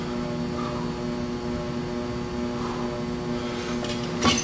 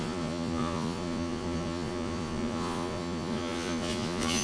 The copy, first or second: second